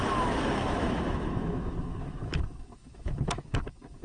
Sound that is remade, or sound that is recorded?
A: remade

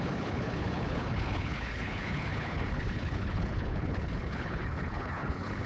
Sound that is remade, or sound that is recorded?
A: remade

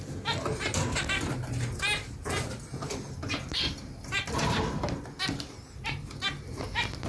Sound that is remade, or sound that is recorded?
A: recorded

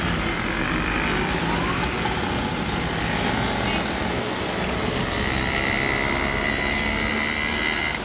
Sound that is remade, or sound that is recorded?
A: recorded